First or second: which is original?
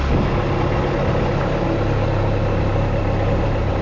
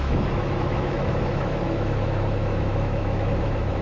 first